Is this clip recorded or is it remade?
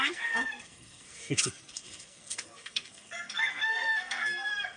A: remade